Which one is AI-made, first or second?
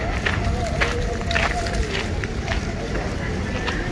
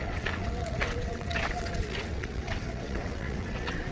second